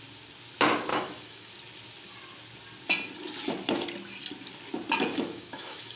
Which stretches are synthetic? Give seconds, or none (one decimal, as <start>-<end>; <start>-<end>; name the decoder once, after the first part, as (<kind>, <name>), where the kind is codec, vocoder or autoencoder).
0.9-1.5 (autoencoder, DAC-VAE); 5.1-6.0